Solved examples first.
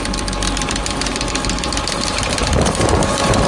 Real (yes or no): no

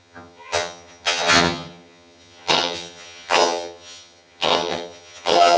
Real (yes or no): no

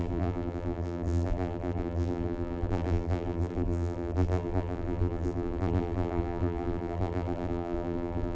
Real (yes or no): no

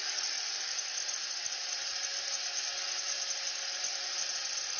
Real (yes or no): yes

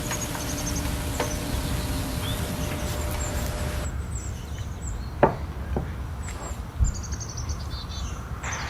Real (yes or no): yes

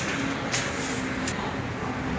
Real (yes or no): yes